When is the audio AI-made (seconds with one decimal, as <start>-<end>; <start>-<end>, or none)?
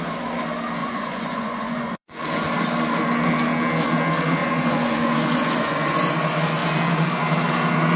0.8-2.2; 4.4-6.1